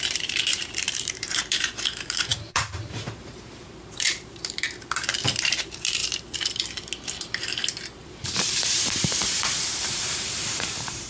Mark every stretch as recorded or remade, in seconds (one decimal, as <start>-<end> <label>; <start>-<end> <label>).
0.0-6.0 remade; 6.0-8.0 recorded; 8.0-11.1 remade